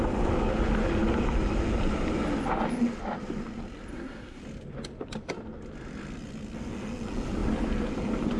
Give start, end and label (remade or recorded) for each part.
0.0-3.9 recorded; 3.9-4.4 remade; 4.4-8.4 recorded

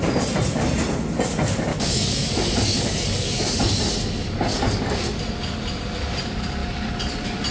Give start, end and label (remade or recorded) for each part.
0.0-1.7 recorded; 1.7-3.8 remade; 3.8-4.5 recorded; 4.5-5.2 remade; 5.2-7.5 recorded

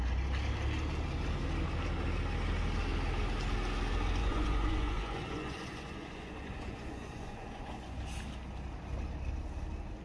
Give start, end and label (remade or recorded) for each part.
0.0-4.2 recorded; 4.2-8.0 remade; 8.0-10.0 recorded

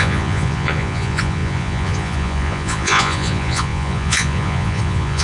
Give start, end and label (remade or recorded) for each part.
0.0-5.2 remade

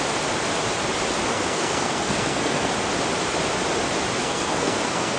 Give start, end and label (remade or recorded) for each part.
0.0-1.3 recorded; 1.3-2.7 remade; 2.7-4.2 recorded; 4.2-5.2 remade

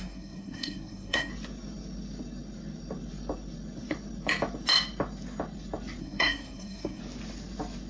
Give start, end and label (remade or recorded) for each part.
0.0-1.3 remade; 1.3-6.0 recorded; 6.0-7.0 remade; 7.0-7.9 recorded